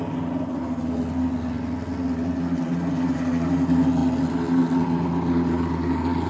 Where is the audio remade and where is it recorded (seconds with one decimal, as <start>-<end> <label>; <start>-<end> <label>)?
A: 0.0-6.3 recorded

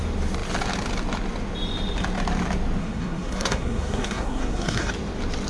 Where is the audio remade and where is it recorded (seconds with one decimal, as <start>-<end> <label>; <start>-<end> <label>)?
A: 0.0-2.8 recorded; 2.8-4.9 remade; 4.9-5.5 recorded

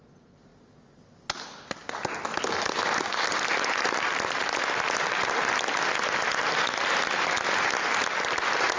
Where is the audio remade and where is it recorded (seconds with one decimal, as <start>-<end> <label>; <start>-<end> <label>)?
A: 0.0-8.8 recorded